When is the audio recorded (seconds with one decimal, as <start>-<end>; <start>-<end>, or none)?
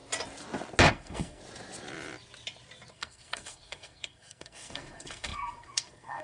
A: 0.0-0.9; 1.4-2.9